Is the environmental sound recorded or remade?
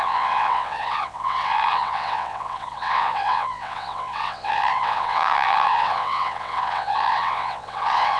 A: remade